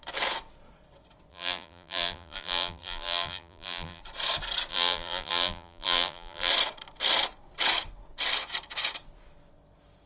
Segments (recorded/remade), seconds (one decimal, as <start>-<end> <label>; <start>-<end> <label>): 0.0-1.3 recorded; 1.3-4.0 remade; 4.0-4.7 recorded; 4.7-6.5 remade; 6.5-10.1 recorded